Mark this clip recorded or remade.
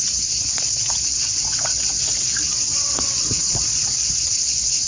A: remade